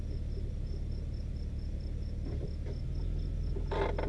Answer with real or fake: real